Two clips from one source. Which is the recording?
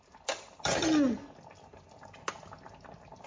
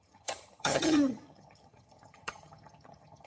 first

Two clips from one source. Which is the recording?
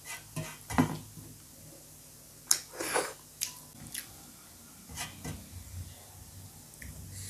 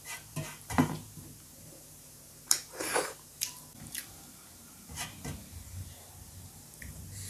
first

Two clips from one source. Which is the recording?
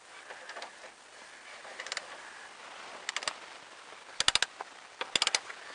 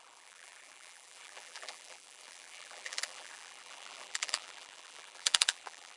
first